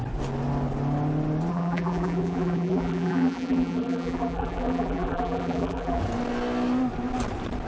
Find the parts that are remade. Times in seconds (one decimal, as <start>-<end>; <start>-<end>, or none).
1.5-6.0